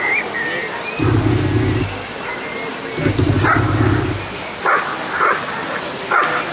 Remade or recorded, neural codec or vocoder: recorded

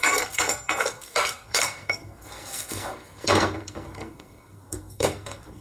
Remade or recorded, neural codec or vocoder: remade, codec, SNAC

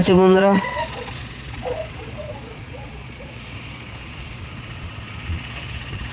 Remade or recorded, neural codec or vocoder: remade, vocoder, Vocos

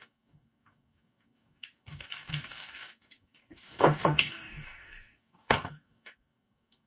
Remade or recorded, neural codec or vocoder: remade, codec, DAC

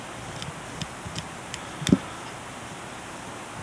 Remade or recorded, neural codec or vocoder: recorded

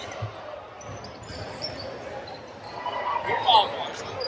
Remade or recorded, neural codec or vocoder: recorded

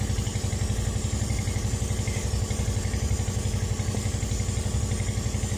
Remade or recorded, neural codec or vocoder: recorded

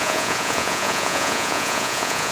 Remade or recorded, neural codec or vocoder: remade, vocoder, Vocos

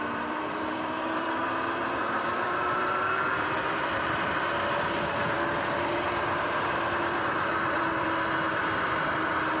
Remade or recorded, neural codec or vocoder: remade, vocoder, BigVGAN v2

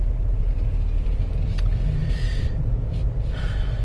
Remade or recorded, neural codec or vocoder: remade, vocoder, BigVGAN v2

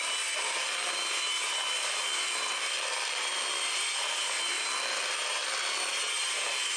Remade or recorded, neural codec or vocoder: recorded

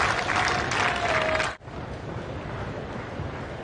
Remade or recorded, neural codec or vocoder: recorded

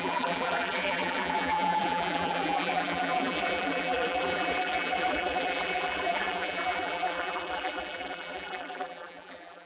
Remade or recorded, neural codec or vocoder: remade, vocoder, BigVGAN v2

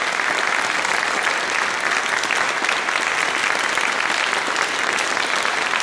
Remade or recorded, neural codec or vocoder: recorded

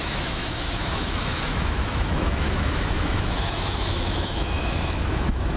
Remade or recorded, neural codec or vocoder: remade, autoencoder, DAC-VAE